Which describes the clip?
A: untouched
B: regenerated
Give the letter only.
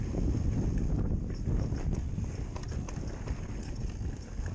A